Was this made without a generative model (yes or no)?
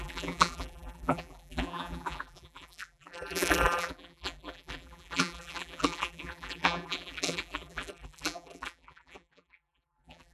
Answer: no